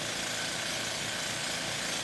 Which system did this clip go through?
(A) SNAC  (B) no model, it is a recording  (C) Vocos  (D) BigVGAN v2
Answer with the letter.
B